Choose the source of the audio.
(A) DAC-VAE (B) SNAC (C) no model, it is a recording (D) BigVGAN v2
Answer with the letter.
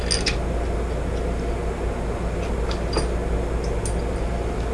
C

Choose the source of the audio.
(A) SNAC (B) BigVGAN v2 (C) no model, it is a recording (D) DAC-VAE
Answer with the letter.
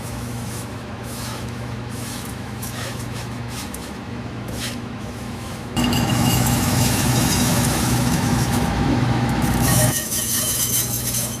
D